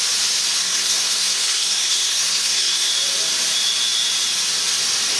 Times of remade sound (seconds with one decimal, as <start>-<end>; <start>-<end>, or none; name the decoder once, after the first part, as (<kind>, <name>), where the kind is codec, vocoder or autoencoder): 0.6-2.9 (codec, SNAC)